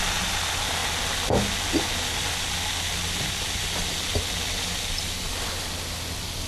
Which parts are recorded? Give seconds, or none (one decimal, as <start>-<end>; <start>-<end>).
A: 0.0-6.5